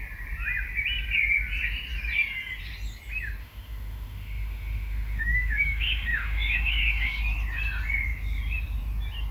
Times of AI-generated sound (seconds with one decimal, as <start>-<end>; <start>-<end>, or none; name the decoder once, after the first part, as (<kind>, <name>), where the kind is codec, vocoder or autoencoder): 3.4-7.2 (autoencoder, DAC-VAE)